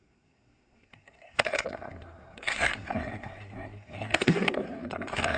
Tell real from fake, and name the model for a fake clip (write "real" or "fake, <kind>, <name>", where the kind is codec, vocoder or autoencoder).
fake, codec, SNAC